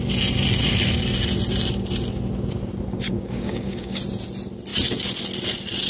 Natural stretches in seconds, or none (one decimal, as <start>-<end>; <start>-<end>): 0.0-3.1; 4.0-5.9